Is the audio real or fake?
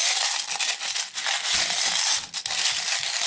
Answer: real